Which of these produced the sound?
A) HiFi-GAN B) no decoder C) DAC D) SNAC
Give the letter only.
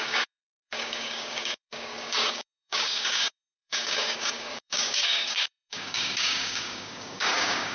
C